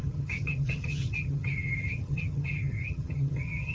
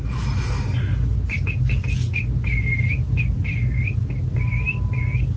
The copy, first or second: first